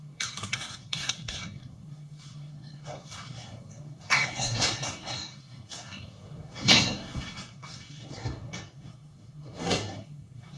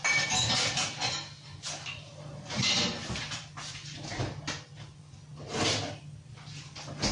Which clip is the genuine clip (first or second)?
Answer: second